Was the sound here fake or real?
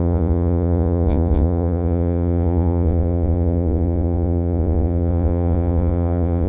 fake